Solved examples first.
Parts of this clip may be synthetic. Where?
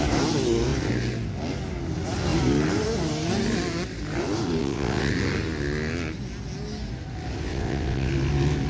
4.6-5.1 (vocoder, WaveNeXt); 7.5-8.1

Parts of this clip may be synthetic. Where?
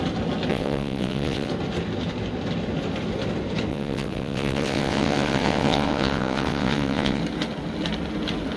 0.5-1.5 (vocoder, WaveNeXt); 3.7-7.2